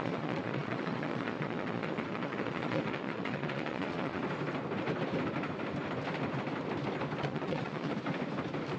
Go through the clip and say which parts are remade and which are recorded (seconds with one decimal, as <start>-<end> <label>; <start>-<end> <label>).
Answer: 0.0-4.2 remade; 4.2-7.2 recorded; 7.2-7.9 remade; 7.9-8.8 recorded